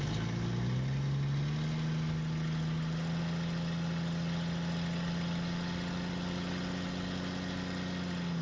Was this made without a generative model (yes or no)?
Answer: yes